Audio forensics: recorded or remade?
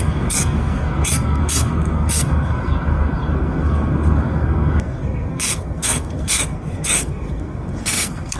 remade